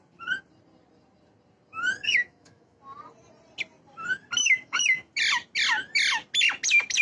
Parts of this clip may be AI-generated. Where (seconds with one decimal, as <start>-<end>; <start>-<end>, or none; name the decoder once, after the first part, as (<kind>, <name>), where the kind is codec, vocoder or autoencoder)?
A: 2.0-2.8 (autoencoder, DAC-VAE); 4.4-5.1